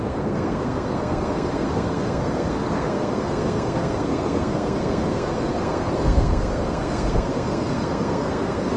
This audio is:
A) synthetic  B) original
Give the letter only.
A